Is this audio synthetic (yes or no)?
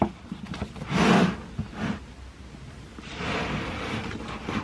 no